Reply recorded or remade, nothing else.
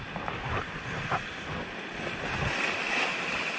recorded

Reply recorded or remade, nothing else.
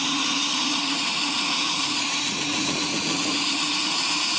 remade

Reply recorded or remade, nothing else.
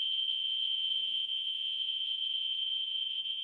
remade